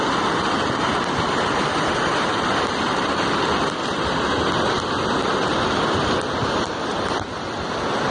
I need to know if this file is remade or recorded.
recorded